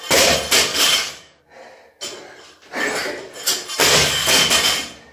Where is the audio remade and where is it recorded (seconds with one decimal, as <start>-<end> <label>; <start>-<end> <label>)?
0.0-0.7 recorded; 0.7-1.4 remade; 1.4-3.8 recorded; 3.8-4.5 remade; 4.5-5.1 recorded